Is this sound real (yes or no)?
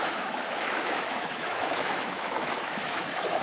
no